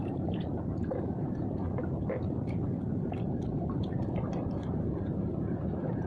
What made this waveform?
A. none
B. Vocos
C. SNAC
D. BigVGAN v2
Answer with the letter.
D